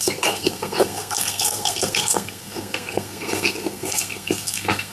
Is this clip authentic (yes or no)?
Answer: no